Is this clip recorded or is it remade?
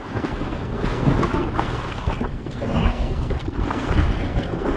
remade